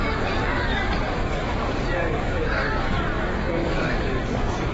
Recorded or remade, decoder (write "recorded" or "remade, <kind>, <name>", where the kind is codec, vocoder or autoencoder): remade, codec, DAC